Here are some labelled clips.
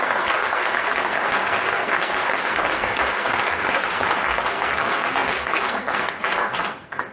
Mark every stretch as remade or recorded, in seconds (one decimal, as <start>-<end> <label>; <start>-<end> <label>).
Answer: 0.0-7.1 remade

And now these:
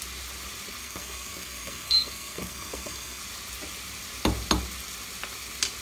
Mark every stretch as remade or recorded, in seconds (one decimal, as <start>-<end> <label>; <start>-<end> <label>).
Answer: 0.0-0.8 recorded; 0.8-3.2 remade; 3.2-5.8 recorded

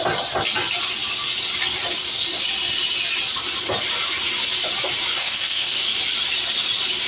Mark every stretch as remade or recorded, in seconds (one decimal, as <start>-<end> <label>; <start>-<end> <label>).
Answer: 0.0-5.2 recorded; 5.2-5.8 remade; 5.8-7.1 recorded

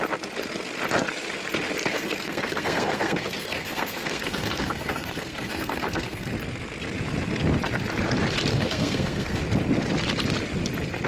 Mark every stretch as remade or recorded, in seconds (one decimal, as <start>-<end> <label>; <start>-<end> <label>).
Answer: 0.0-1.9 recorded; 1.9-6.3 remade; 6.3-8.5 recorded; 8.5-9.4 remade; 9.4-11.1 recorded

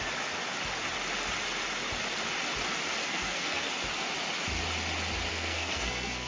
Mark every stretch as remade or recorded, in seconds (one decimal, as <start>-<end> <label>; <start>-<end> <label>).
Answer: 0.0-3.0 recorded; 3.0-3.7 remade; 3.7-5.3 recorded; 5.3-6.3 remade

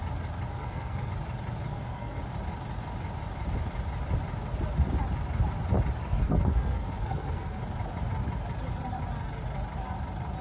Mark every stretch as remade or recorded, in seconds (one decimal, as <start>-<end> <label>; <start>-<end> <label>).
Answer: 0.0-0.5 recorded; 0.5-1.1 remade; 1.1-1.7 recorded; 1.7-2.2 remade; 2.2-6.0 recorded; 6.0-7.6 remade; 7.6-10.4 recorded

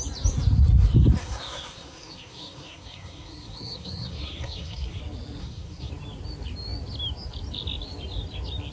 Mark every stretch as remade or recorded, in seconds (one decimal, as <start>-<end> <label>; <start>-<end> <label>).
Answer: 0.0-1.2 recorded; 1.2-5.0 remade; 5.0-5.4 recorded; 5.4-5.9 remade; 5.9-8.7 recorded

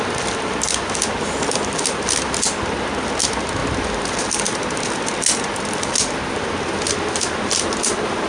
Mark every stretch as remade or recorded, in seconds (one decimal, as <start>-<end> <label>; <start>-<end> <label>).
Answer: 0.0-8.3 recorded